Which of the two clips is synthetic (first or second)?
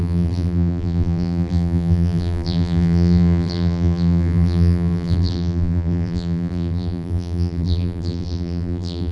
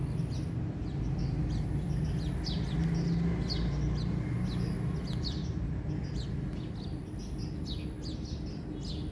first